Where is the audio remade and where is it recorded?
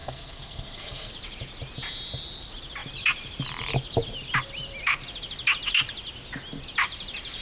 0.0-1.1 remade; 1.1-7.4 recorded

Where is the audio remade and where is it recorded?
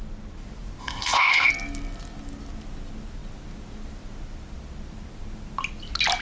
0.0-0.8 recorded; 0.8-1.5 remade; 1.5-6.2 recorded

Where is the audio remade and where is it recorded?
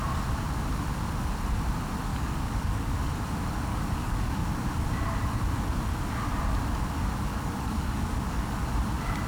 0.0-2.1 recorded; 2.1-2.9 remade; 2.9-3.7 recorded; 3.7-4.4 remade; 4.4-7.3 recorded; 7.3-8.6 remade; 8.6-9.3 recorded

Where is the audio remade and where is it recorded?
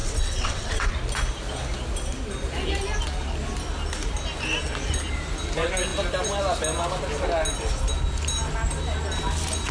0.0-0.9 remade; 0.9-9.7 recorded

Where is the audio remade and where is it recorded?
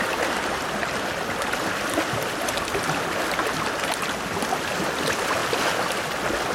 0.0-6.5 recorded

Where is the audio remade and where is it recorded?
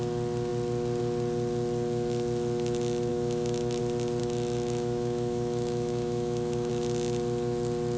0.0-3.1 recorded; 3.1-3.8 remade; 3.8-4.2 recorded; 4.2-6.7 remade; 6.7-8.0 recorded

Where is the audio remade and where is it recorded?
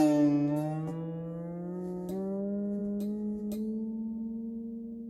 0.0-5.1 recorded